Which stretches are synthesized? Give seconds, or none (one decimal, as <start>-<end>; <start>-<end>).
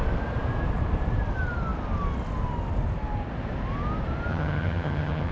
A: 4.3-5.3